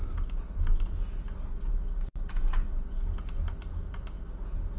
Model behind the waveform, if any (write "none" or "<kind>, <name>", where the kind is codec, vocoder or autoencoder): none